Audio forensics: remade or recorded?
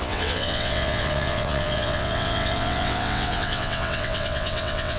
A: remade